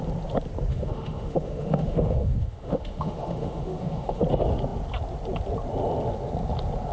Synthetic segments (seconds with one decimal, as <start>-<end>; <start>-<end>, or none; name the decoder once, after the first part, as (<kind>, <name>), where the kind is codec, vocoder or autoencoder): 0.7-4.2 (autoencoder, DAC-VAE)